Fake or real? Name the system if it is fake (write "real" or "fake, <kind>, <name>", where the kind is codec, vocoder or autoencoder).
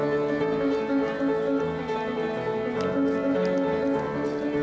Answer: real